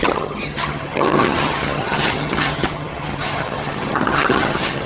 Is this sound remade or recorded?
remade